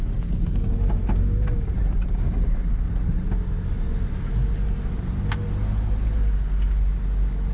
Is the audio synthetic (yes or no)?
no